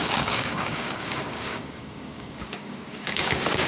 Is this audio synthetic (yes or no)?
yes